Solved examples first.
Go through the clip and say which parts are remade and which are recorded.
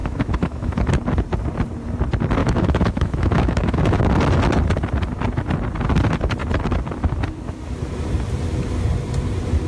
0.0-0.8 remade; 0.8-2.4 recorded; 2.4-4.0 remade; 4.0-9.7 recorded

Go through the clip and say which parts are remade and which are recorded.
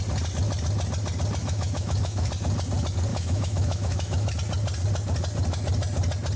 0.0-1.4 recorded; 1.4-2.3 remade; 2.3-3.1 recorded; 3.1-4.3 remade; 4.3-6.4 recorded